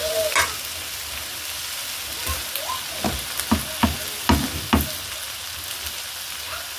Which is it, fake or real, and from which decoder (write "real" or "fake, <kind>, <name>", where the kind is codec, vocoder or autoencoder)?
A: real